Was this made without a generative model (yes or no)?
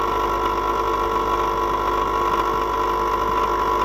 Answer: yes